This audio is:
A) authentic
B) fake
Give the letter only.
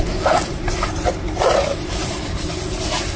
A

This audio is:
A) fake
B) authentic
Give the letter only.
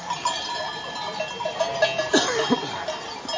B